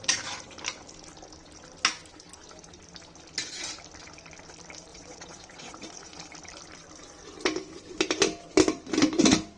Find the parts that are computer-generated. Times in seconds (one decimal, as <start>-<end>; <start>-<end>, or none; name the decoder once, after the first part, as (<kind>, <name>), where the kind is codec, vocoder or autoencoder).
4.9-6.1 (vocoder, Vocos)